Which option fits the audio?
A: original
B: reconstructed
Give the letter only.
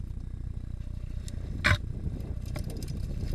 A